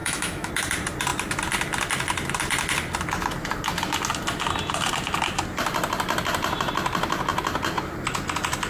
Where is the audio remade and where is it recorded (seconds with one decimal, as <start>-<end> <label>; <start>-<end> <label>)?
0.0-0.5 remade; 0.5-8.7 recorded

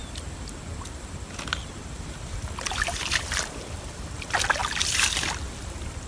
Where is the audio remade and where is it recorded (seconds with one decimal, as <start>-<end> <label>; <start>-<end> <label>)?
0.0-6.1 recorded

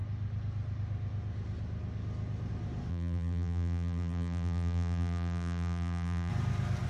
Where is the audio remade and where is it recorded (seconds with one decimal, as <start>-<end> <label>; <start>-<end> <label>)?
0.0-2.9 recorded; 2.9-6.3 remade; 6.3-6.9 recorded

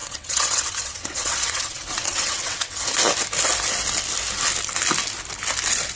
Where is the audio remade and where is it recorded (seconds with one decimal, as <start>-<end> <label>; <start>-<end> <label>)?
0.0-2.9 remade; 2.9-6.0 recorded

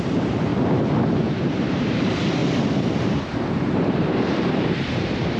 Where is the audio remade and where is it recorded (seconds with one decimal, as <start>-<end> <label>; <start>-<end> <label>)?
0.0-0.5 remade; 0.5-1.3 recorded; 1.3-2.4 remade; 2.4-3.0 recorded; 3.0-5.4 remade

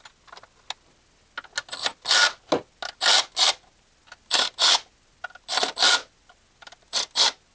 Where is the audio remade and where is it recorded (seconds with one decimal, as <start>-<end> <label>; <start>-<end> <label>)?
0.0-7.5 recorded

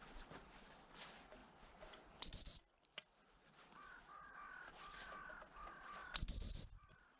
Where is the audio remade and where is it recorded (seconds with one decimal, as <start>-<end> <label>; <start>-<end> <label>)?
0.0-7.2 recorded